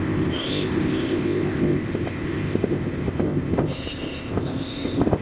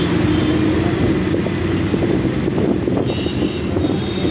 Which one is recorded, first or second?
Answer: second